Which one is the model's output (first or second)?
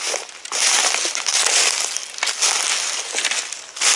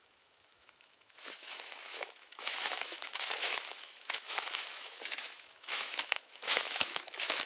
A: second